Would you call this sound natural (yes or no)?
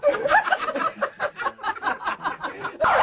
yes